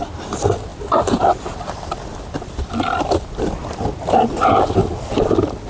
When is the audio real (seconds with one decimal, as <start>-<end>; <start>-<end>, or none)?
0.0-5.7